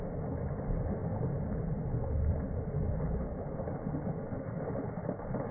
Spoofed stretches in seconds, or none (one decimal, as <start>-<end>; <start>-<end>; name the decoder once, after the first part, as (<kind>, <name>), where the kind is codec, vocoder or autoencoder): none